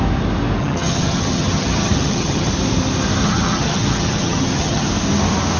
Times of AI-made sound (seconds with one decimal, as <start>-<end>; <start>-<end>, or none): 0.6-2.5; 3.2-4.9